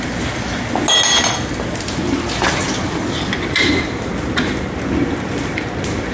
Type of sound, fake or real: real